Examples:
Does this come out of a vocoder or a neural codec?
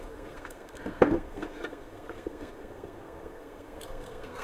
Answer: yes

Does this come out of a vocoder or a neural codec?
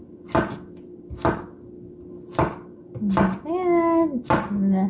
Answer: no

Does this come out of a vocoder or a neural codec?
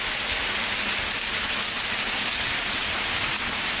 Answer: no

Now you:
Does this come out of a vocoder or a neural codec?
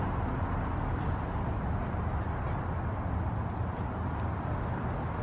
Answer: no